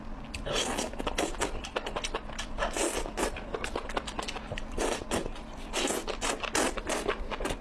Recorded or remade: recorded